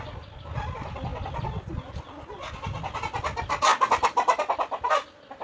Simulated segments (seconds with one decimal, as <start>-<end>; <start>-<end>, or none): none